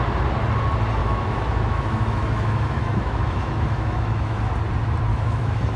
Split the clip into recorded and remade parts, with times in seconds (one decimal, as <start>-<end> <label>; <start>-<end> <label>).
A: 0.0-1.0 recorded; 1.0-4.5 remade; 4.5-5.1 recorded; 5.1-5.8 remade

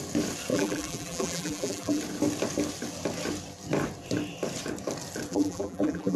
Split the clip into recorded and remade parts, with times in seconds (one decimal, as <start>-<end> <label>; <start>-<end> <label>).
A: 0.0-0.5 recorded; 0.5-2.0 remade; 2.0-5.3 recorded; 5.3-6.2 remade